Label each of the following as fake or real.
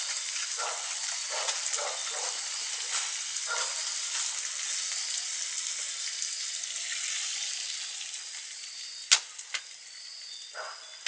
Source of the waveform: real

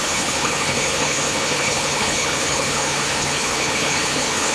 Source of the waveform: fake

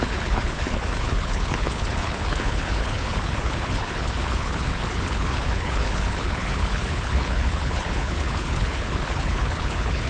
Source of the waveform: fake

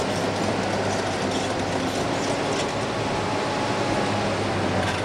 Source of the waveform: real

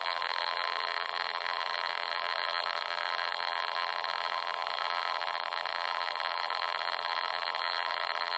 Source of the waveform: fake